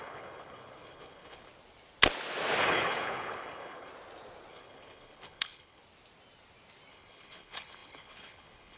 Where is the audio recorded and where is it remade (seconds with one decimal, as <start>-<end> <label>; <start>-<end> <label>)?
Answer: 0.0-1.5 remade; 1.5-2.6 recorded; 2.6-3.9 remade; 3.9-4.5 recorded; 4.5-5.8 remade; 5.8-6.9 recorded; 6.9-8.8 remade